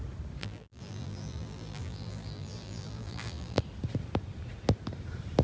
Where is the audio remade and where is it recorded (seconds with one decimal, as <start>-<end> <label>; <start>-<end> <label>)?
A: 0.0-0.4 recorded; 0.4-3.6 remade; 3.6-5.4 recorded